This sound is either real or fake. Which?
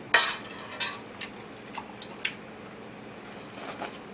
real